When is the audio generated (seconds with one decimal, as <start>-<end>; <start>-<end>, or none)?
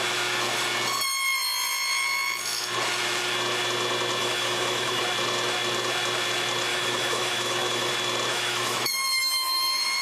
4.2-5.0; 6.7-7.9; 8.3-10.0